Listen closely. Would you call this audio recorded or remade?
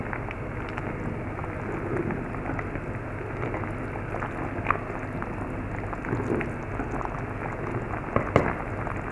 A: recorded